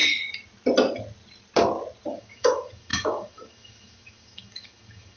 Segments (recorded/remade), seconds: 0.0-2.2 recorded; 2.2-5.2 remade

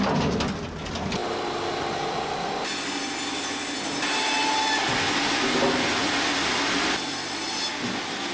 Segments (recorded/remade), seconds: 0.0-8.3 recorded

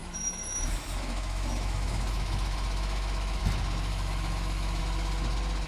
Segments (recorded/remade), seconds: 0.0-3.4 remade; 3.4-3.9 recorded; 3.9-4.8 remade; 4.8-5.7 recorded

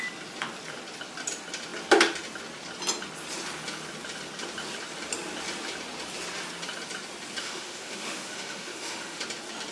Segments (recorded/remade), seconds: 0.0-7.4 recorded; 7.4-9.2 remade; 9.2-9.7 recorded

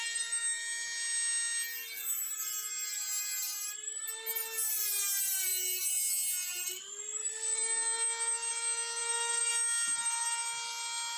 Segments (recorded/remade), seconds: 0.0-11.2 recorded

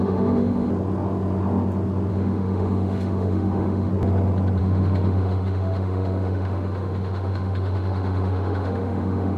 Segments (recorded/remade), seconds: 0.0-0.7 remade; 0.7-2.1 recorded; 2.1-3.9 remade; 3.9-4.6 recorded; 4.6-9.4 remade

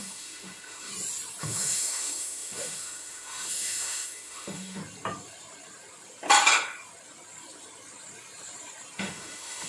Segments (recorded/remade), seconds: 0.0-0.9 remade; 0.9-1.4 recorded; 1.4-4.8 remade; 4.8-9.0 recorded; 9.0-9.7 remade